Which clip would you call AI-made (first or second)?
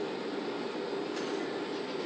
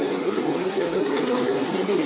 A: second